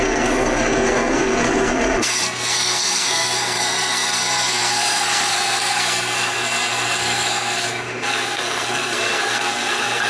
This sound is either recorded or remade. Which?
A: remade